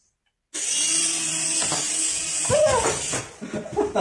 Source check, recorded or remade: recorded